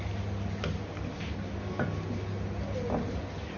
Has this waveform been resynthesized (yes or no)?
no